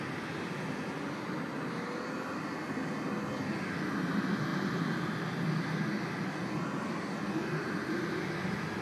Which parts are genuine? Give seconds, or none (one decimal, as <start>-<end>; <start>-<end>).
0.0-8.8